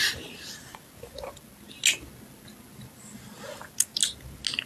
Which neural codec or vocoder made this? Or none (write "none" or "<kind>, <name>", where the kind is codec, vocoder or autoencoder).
none